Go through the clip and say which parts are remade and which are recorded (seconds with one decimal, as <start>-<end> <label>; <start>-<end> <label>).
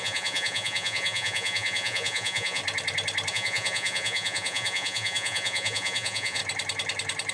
0.0-2.6 remade; 2.6-3.3 recorded; 3.3-6.4 remade; 6.4-7.3 recorded